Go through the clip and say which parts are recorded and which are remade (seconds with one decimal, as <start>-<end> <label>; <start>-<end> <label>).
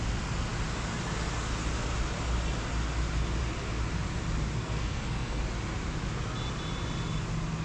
0.0-4.6 recorded; 4.6-5.4 remade; 5.4-7.6 recorded